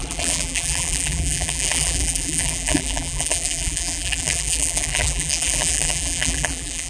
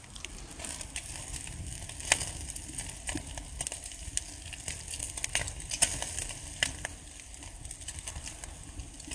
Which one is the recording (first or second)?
second